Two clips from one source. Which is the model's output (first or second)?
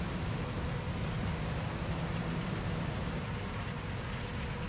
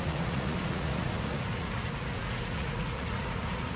second